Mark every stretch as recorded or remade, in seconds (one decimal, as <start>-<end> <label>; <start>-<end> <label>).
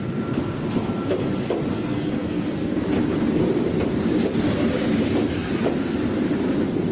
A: 0.0-1.7 recorded; 1.7-2.8 remade; 2.8-6.9 recorded